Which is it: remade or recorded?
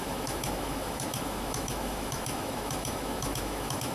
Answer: remade